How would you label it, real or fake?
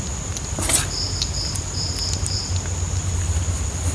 real